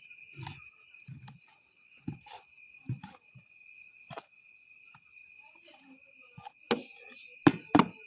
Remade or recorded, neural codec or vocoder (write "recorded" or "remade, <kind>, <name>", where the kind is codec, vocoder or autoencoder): recorded